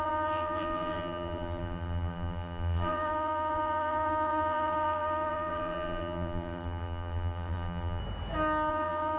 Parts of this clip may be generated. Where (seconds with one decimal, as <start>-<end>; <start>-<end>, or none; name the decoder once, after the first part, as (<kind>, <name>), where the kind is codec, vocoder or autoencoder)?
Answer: 0.0-8.0 (vocoder, BigVGAN v2); 8.7-9.2

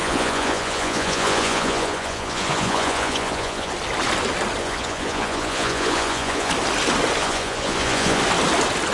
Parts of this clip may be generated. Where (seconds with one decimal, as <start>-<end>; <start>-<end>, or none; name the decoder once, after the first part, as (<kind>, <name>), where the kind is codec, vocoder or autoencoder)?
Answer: 0.0-3.7 (vocoder, Vocos); 4.6-6.5; 7.2-8.2